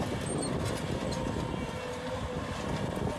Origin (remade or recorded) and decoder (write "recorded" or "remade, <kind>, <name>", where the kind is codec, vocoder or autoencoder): recorded